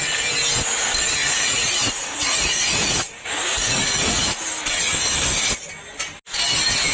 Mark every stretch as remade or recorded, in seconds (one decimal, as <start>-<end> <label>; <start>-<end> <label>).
0.0-1.2 recorded; 1.2-4.4 remade; 4.4-6.9 recorded

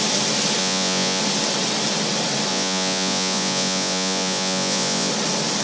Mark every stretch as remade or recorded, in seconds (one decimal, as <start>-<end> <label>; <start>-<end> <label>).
0.0-0.6 recorded; 0.6-1.2 remade; 1.2-2.5 recorded; 2.5-5.1 remade; 5.1-5.6 recorded

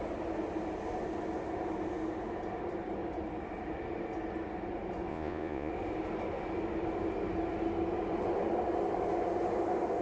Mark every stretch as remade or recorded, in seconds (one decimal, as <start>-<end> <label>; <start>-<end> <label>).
0.0-5.1 recorded; 5.1-5.7 remade; 5.7-10.0 recorded